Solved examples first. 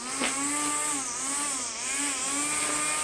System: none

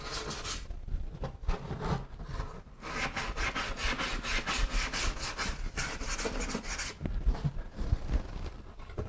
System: none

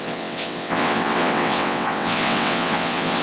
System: vocoder, WaveNeXt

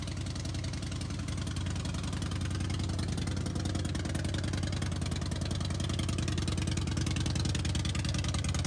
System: none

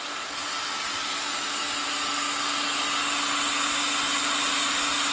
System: none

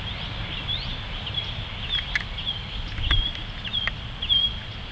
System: none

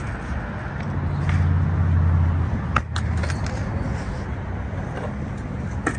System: none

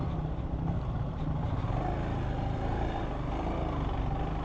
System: none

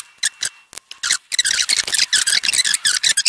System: none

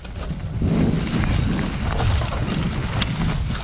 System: none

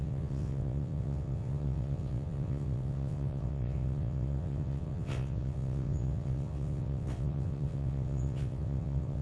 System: vocoder, WaveNeXt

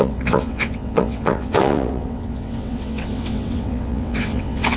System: vocoder, WaveNeXt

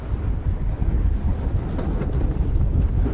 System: none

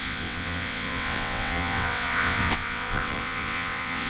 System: vocoder, WaveNeXt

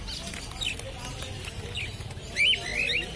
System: none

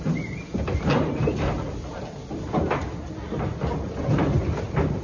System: none